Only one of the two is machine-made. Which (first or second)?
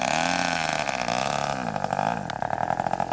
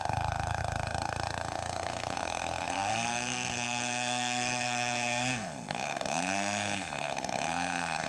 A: second